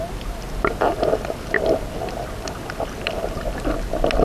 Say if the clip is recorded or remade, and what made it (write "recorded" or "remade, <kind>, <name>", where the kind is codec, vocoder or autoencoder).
recorded